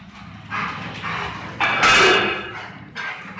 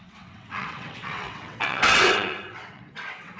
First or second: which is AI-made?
second